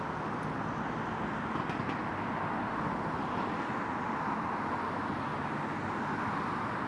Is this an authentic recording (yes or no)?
yes